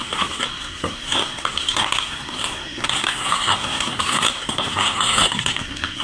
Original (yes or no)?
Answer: no